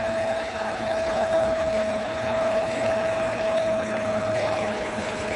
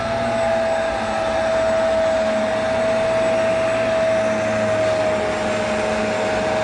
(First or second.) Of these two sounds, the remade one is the first